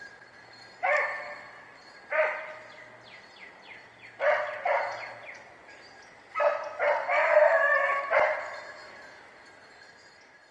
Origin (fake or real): real